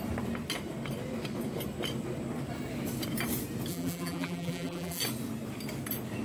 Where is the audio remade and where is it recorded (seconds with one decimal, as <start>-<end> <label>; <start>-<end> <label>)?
0.0-3.7 recorded; 3.7-5.0 remade; 5.0-6.2 recorded